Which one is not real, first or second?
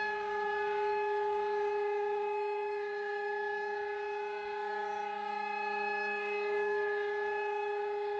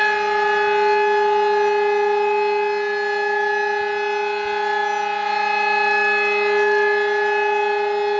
first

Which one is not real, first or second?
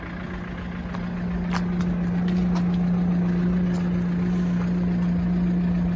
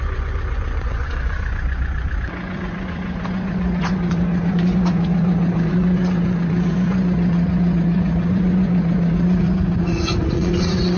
second